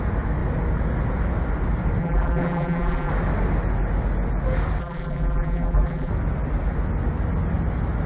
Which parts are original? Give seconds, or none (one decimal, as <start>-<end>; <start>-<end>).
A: 0.0-2.0; 3.1-4.8; 6.1-8.1